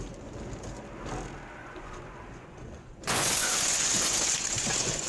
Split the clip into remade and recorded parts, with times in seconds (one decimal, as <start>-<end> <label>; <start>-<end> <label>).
0.0-1.6 recorded; 1.6-5.1 remade

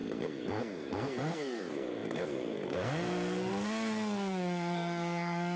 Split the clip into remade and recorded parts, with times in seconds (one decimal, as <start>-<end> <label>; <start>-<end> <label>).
0.0-5.6 remade

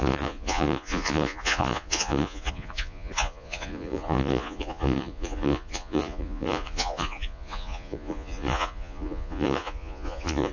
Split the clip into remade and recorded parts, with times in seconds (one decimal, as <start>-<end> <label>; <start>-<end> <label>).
0.0-10.5 remade

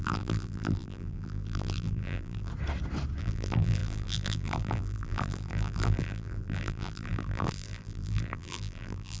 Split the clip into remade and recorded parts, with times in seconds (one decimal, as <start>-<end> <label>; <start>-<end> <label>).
0.0-2.5 remade; 2.5-3.2 recorded; 3.2-9.2 remade

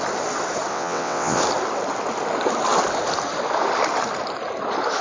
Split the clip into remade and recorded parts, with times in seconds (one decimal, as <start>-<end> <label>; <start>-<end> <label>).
0.0-0.7 recorded; 0.7-1.4 remade; 1.4-5.0 recorded

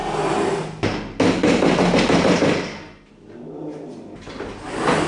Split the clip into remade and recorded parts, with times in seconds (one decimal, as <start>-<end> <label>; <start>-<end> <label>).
0.0-5.1 recorded

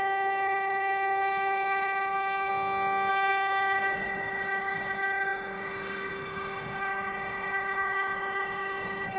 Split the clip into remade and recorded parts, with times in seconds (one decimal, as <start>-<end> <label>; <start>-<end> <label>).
0.0-2.5 remade; 2.5-3.1 recorded; 3.1-9.2 remade

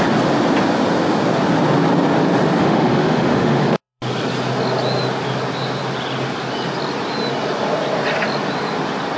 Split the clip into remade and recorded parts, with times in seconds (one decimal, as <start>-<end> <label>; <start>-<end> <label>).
0.0-2.6 recorded; 2.6-4.0 remade; 4.0-9.2 recorded